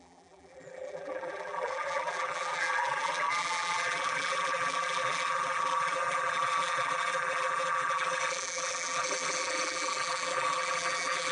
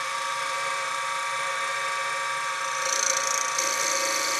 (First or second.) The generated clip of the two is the first